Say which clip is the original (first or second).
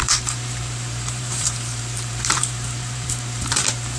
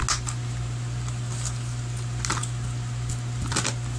second